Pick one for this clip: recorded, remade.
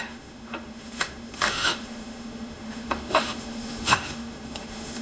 remade